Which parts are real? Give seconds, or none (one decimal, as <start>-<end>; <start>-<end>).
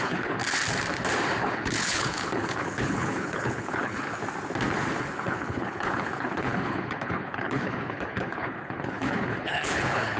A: 0.4-1.4; 4.2-5.0